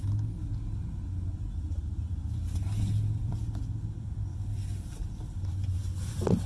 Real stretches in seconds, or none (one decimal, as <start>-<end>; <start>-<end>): 0.0-4.3